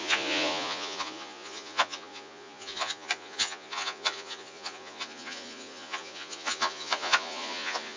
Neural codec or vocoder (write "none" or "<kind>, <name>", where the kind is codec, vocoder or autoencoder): vocoder, Vocos